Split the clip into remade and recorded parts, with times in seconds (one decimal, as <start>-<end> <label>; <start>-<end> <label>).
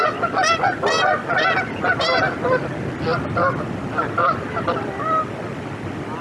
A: 0.0-6.2 recorded